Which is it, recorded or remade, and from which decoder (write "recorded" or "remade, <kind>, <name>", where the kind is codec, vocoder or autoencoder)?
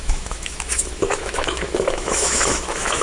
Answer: remade, autoencoder, DAC-VAE